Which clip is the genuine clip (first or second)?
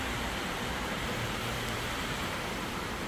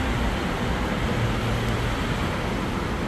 second